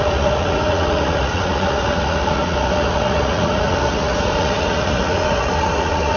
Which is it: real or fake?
fake